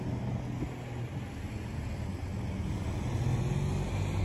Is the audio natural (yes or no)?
yes